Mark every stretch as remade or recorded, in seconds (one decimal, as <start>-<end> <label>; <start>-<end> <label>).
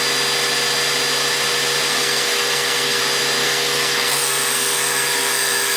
0.0-1.9 recorded; 1.9-3.0 remade; 3.0-3.4 recorded; 3.4-5.8 remade